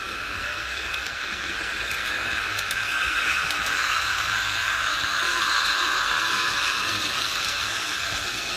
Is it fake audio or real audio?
fake